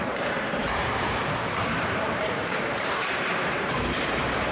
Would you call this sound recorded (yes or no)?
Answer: no